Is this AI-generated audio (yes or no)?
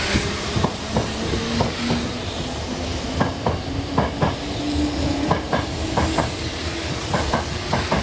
no